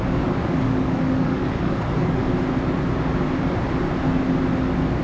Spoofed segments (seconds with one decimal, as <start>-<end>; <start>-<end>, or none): 0.0-2.2